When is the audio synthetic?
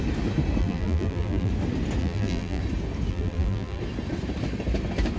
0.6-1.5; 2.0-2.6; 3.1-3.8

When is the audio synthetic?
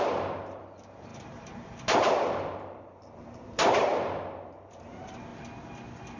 0.0-5.3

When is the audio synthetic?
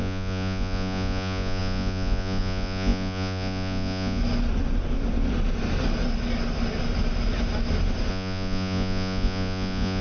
0.0-4.2; 8.1-10.0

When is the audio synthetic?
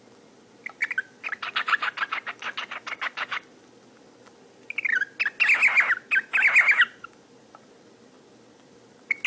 none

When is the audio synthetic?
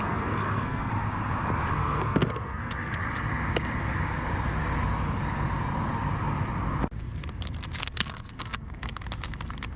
0.0-0.9; 1.7-3.0; 7.8-8.9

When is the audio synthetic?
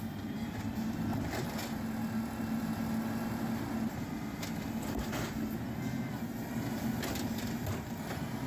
none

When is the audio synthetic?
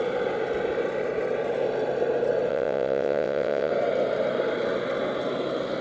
2.5-3.7